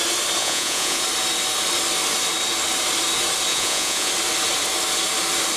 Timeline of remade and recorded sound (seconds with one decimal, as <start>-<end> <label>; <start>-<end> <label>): 0.0-0.4 recorded; 0.4-1.0 remade; 1.0-3.5 recorded; 3.5-4.1 remade; 4.1-5.6 recorded

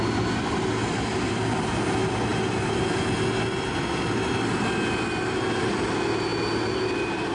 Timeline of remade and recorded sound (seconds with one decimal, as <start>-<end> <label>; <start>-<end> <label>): 0.0-7.3 recorded

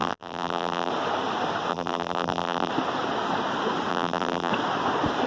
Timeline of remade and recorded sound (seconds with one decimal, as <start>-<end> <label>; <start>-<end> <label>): 0.0-0.9 remade; 0.9-1.7 recorded; 1.7-2.7 remade; 2.7-3.9 recorded; 3.9-4.5 remade; 4.5-5.3 recorded

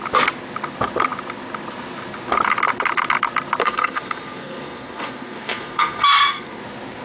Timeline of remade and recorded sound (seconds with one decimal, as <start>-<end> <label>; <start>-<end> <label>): 0.0-3.6 recorded; 3.6-6.6 remade; 6.6-7.0 recorded

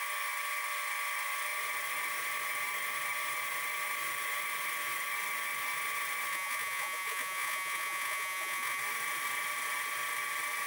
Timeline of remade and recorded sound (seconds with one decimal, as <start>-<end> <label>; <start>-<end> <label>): 0.0-6.3 recorded; 6.3-8.8 remade; 8.8-10.7 recorded

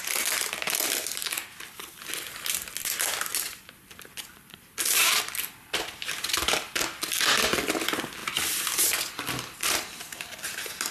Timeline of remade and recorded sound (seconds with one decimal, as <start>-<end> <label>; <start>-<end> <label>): 0.0-3.3 recorded; 3.3-5.5 remade; 5.5-8.2 recorded; 8.2-9.6 remade; 9.6-10.1 recorded; 10.1-10.9 remade

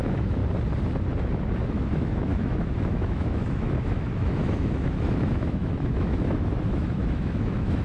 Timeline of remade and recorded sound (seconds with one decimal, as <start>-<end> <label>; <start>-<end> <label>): 0.0-0.4 remade; 0.4-1.7 recorded; 1.7-7.8 remade

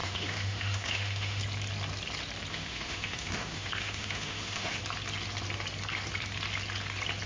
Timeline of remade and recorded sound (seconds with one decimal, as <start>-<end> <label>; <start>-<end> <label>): 0.0-1.4 remade; 1.4-2.5 recorded; 2.5-4.8 remade; 4.8-7.3 recorded